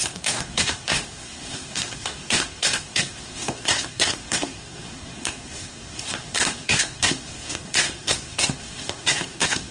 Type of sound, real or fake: fake